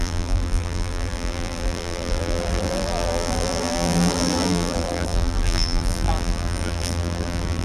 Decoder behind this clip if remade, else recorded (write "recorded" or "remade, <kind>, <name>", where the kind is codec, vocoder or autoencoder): remade, vocoder, BigVGAN v2